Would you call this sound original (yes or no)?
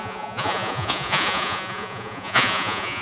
no